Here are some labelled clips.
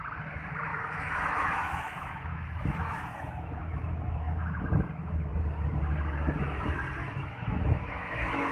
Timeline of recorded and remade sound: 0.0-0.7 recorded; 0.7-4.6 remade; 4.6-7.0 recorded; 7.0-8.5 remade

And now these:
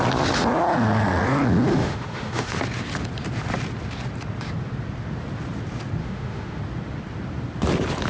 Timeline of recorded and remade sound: 0.0-1.7 recorded; 1.7-2.6 remade; 2.6-6.0 recorded; 6.0-6.6 remade; 6.6-8.1 recorded

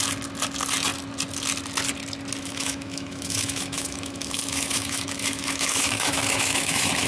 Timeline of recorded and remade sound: 0.0-2.4 recorded; 2.4-7.1 remade